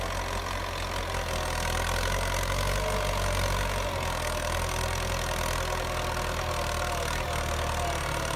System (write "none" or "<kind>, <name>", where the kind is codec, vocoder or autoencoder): none